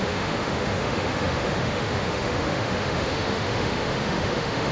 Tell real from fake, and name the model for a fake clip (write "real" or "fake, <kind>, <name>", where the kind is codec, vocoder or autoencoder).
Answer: fake, autoencoder, DAC-VAE